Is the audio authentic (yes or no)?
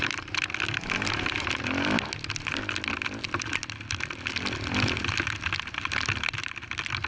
yes